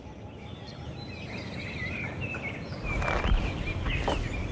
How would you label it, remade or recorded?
recorded